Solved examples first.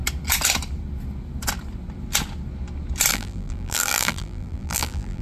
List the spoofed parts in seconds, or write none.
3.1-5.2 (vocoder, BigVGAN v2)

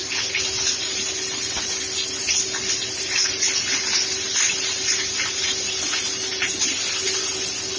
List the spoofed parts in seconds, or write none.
none

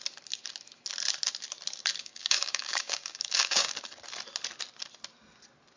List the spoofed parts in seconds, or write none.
2.0-3.7 (codec, DAC)

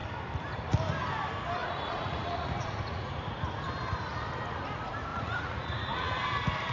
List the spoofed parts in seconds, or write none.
1.6-3.1 (vocoder, Vocos); 5.1-6.1